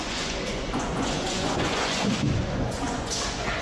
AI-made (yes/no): yes